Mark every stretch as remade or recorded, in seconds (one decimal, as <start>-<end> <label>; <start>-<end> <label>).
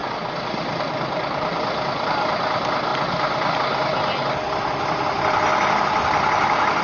0.0-6.8 recorded